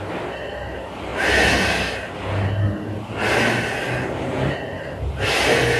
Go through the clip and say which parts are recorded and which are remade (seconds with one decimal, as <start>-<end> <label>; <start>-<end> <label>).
0.0-5.8 recorded